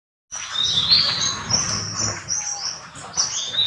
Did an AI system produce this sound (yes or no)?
no